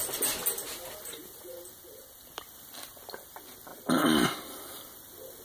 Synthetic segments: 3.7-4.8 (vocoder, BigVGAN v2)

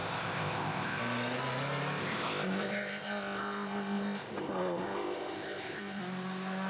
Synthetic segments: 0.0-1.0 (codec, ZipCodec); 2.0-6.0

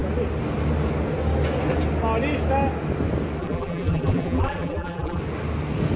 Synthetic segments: 3.4-5.2 (vocoder, BigVGAN v2)